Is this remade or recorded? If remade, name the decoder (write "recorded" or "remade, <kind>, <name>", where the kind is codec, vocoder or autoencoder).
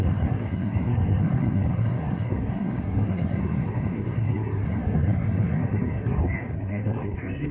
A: remade, codec, SNAC